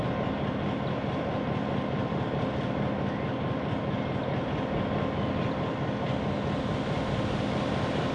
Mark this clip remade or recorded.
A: recorded